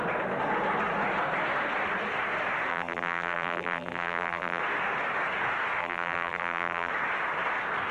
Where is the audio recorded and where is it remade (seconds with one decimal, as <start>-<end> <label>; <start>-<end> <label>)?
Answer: 0.0-2.7 recorded; 2.7-4.6 remade; 4.6-5.8 recorded; 5.8-6.9 remade; 6.9-7.9 recorded